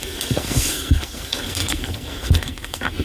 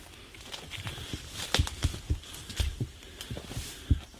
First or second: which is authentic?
second